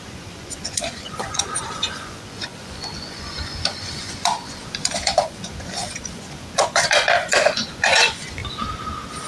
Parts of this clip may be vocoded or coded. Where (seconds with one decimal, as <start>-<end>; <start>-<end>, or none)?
0.0-8.4